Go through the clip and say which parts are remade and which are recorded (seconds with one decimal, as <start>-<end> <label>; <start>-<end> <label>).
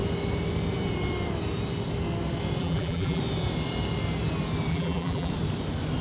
0.0-2.6 recorded; 2.6-3.2 remade; 3.2-4.7 recorded; 4.7-5.3 remade; 5.3-6.0 recorded